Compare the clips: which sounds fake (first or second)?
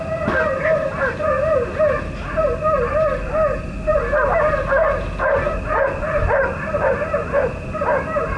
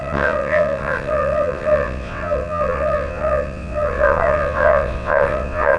second